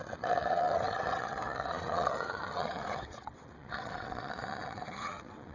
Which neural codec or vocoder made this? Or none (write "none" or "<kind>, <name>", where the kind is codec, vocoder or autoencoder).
vocoder, WaveNeXt